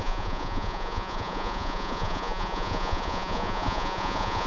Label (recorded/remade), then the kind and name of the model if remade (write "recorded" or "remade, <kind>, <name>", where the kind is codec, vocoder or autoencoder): remade, vocoder, Vocos